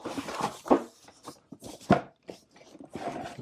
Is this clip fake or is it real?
fake